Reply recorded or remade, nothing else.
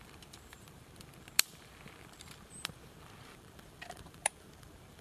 remade